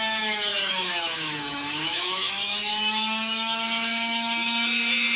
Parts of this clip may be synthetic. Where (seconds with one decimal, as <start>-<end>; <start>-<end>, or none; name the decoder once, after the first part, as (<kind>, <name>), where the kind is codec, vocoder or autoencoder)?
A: 0.0-5.2 (autoencoder, DAC-VAE)